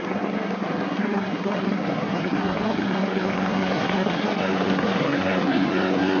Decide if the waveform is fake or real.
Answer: fake